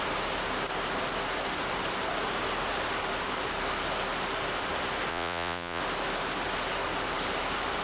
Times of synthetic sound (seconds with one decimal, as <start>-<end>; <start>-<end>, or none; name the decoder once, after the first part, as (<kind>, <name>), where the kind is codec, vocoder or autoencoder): 5.1-5.8 (vocoder, Vocos)